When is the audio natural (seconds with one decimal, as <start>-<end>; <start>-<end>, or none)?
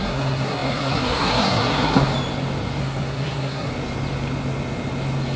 2.1-2.8; 3.7-5.4